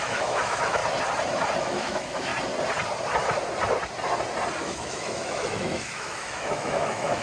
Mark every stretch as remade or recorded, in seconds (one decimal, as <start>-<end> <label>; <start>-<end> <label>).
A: 0.0-0.8 remade; 0.8-1.6 recorded; 1.6-2.3 remade; 2.3-4.6 recorded; 4.6-7.2 remade